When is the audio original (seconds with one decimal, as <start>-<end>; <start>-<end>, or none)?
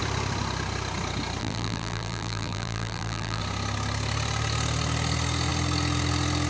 0.0-1.4; 3.4-6.5